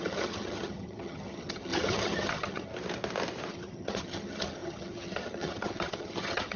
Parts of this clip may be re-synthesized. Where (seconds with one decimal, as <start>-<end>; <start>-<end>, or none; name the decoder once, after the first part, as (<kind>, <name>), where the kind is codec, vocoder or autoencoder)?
0.0-2.7 (vocoder, HiFi-GAN); 3.5-6.6